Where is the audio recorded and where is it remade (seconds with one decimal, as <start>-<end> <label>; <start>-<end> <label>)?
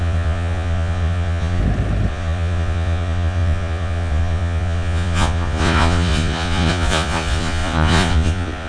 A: 0.0-1.6 remade; 1.6-2.1 recorded; 2.1-8.7 remade